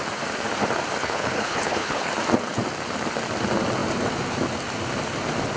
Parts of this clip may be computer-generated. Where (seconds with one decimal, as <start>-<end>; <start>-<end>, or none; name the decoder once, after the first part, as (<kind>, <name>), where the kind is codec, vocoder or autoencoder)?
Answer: 1.0-2.1 (codec, HILCodec)